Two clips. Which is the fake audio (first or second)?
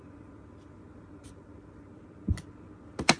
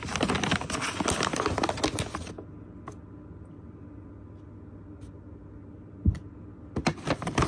first